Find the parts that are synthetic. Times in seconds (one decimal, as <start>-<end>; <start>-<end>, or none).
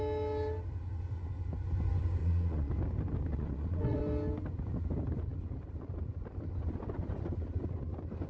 2.2-2.7; 3.3-4.0